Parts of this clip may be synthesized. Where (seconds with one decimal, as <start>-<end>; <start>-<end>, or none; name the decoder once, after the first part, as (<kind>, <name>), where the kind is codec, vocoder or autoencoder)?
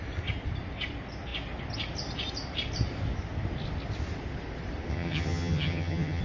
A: 4.9-6.2 (vocoder, HiFi-GAN)